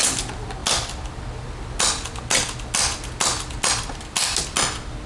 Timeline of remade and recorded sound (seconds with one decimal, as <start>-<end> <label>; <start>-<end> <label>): 0.0-5.1 recorded

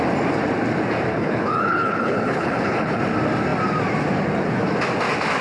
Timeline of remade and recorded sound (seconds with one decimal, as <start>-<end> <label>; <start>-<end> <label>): 0.0-1.1 recorded; 1.1-3.0 remade; 3.0-5.4 recorded